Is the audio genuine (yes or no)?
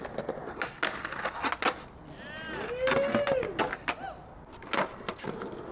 yes